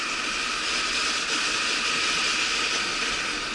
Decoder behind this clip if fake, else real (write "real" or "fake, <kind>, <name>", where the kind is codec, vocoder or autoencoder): real